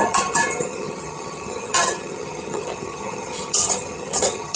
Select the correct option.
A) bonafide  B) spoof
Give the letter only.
B